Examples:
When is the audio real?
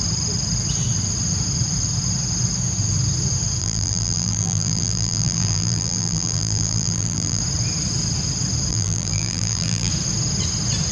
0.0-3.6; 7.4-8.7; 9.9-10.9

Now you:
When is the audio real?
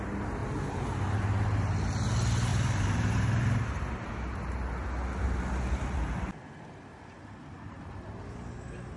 0.0-0.4; 1.2-2.5; 4.1-6.9; 8.2-9.0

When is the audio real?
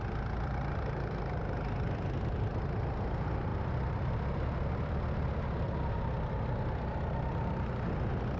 0.0-8.4